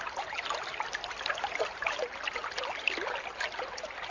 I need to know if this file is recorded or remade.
recorded